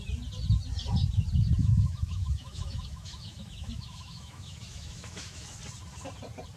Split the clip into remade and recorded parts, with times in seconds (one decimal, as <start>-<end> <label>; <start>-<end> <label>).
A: 0.0-1.6 recorded; 1.6-5.6 remade; 5.6-6.6 recorded